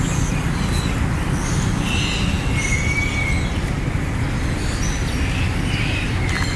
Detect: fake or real real